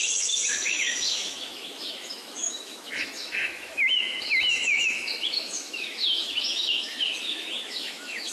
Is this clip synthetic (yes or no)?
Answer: yes